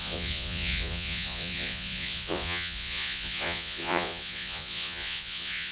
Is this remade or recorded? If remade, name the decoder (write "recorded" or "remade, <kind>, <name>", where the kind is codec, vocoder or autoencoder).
remade, vocoder, Vocos